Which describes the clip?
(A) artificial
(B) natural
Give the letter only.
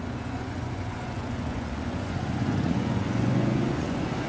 A